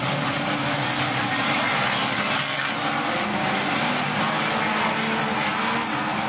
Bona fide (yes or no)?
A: yes